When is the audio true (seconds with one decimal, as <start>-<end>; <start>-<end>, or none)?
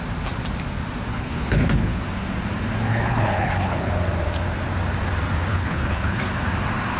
0.0-1.1; 2.0-2.9; 3.9-5.5; 6.3-7.0